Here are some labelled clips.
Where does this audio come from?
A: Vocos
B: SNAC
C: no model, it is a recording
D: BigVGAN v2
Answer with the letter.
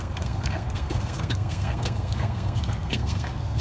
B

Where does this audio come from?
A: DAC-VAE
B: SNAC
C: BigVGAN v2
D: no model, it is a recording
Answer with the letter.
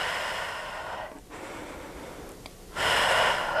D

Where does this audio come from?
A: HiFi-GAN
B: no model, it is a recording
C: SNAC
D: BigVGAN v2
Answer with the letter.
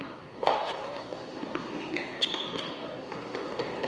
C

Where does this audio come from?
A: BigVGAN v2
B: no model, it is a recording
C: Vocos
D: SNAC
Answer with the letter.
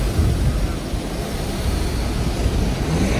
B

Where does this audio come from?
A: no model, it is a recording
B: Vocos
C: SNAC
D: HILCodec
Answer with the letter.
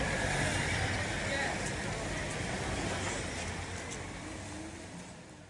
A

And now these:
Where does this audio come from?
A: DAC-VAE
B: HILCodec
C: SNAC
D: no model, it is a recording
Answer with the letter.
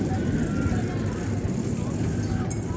D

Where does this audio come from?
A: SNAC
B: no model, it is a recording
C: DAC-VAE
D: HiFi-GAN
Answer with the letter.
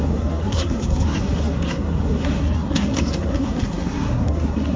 A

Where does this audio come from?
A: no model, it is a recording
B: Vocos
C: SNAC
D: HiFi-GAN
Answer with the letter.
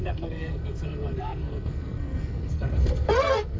C